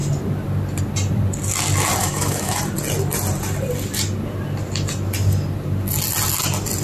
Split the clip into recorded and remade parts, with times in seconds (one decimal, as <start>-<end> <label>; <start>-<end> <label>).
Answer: 0.0-2.0 recorded; 2.0-2.6 remade; 2.6-6.8 recorded